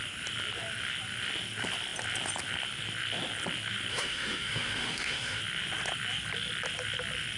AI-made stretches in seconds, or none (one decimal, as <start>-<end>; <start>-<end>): 3.9-5.4